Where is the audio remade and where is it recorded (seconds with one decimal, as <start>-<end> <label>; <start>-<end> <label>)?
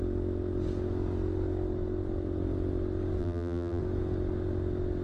0.0-3.2 recorded; 3.2-3.8 remade; 3.8-5.0 recorded